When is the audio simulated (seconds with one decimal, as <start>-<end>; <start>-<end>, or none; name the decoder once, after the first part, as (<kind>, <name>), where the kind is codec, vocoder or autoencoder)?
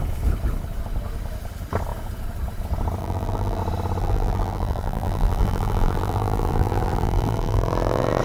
3.0-3.6 (vocoder, BigVGAN v2); 4.0-8.2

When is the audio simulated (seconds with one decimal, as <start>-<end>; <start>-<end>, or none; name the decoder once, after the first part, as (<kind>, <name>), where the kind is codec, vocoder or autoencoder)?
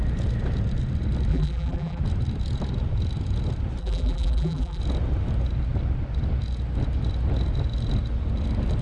1.3-2.0 (vocoder, BigVGAN v2); 3.8-4.8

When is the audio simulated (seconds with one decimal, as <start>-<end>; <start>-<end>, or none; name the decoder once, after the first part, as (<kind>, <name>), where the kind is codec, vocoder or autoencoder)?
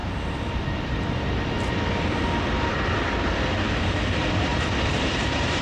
4.5-5.6 (vocoder, BigVGAN v2)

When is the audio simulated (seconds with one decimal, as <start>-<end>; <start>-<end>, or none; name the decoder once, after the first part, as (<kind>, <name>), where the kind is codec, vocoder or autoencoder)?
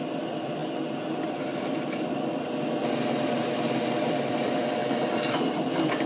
0.0-0.6 (vocoder, BigVGAN v2); 1.3-2.8; 4.3-6.1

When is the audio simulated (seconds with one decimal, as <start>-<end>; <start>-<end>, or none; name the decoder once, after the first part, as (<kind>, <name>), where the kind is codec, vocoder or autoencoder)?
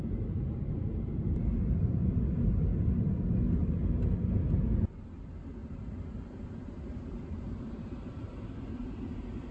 0.0-2.7 (vocoder, BigVGAN v2); 5.0-9.5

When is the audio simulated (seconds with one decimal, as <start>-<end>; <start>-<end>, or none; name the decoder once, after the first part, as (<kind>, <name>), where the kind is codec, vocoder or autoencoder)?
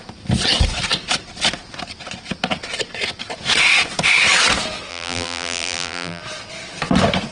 4.9-6.2 (vocoder, BigVGAN v2)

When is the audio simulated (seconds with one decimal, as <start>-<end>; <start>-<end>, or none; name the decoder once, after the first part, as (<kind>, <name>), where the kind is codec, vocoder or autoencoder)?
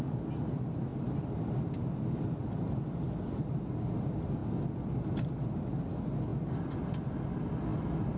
6.3-7.2 (vocoder, BigVGAN v2); 7.7-8.2